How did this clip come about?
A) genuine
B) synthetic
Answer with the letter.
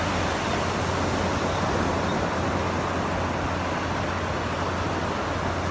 A